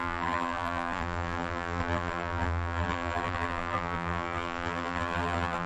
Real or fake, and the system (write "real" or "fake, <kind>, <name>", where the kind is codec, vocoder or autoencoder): fake, vocoder, BigVGAN v2